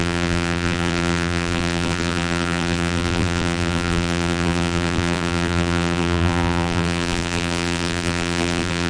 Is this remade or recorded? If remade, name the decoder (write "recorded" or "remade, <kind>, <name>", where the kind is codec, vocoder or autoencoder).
remade, vocoder, BigVGAN v2